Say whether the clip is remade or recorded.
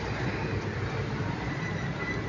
recorded